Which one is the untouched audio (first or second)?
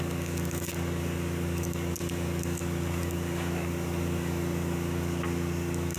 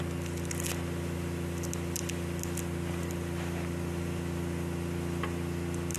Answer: second